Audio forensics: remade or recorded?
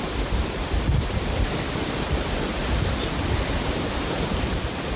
recorded